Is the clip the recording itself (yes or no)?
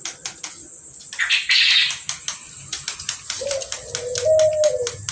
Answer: yes